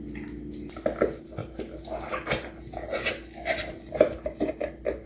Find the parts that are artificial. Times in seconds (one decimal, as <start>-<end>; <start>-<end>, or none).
none